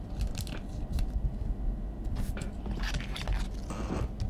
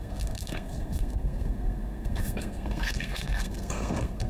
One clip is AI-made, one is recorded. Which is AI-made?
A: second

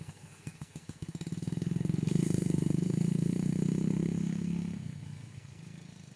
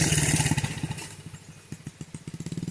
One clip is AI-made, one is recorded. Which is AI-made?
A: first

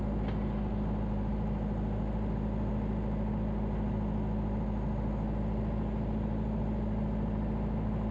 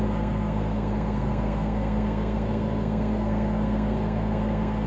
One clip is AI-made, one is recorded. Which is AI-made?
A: second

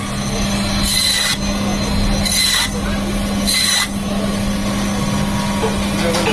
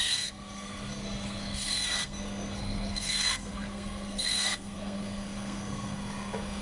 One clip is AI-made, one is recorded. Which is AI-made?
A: second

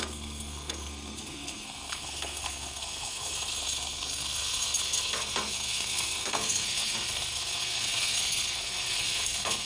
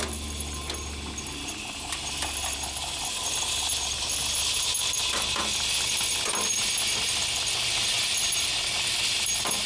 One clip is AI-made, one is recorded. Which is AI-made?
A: first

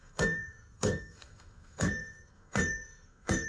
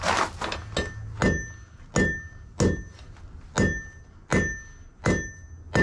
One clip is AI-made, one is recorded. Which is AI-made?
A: first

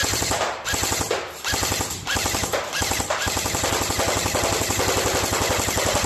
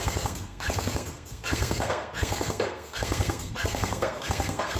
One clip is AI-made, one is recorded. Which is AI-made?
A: second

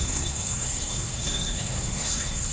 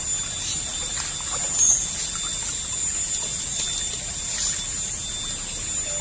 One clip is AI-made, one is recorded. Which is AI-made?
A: first